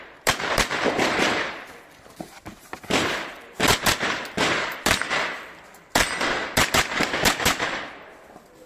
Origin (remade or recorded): remade